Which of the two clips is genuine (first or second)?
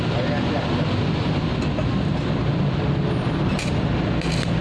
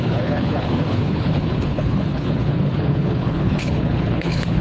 first